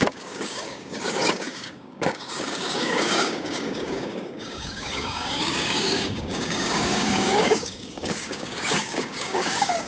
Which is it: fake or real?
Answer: fake